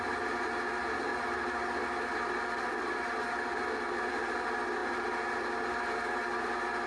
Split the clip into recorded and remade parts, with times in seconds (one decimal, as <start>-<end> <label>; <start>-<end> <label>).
0.0-6.9 recorded